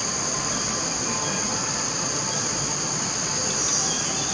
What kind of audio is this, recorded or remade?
recorded